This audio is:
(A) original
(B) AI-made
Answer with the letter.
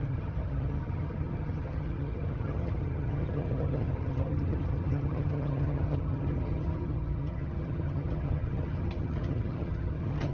B